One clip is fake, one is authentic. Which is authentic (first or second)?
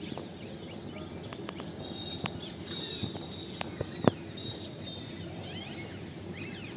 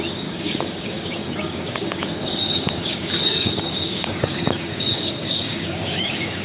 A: first